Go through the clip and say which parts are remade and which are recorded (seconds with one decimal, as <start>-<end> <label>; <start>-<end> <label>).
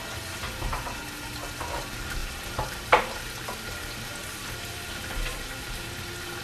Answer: 0.0-2.2 recorded; 2.2-6.0 remade; 6.0-6.4 recorded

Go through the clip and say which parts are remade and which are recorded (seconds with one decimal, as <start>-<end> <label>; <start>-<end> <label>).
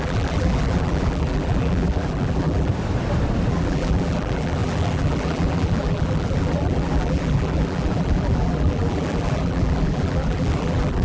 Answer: 0.0-2.7 remade; 2.7-3.5 recorded; 3.5-11.0 remade